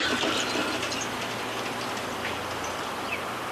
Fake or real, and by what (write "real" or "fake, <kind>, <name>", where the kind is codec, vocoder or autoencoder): real